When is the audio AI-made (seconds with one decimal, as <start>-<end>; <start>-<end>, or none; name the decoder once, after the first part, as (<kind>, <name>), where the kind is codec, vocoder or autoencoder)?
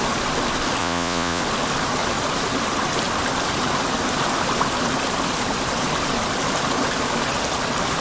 0.8-1.4 (vocoder, Vocos)